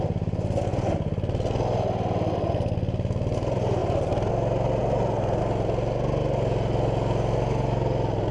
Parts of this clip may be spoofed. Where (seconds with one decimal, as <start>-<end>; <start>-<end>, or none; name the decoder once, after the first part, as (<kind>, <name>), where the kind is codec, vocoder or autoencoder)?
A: 3.8-4.3 (vocoder, BigVGAN v2); 4.8-5.4